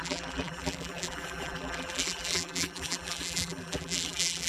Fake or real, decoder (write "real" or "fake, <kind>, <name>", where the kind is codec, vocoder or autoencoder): fake, vocoder, BigVGAN v2